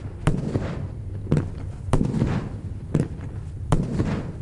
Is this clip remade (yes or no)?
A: no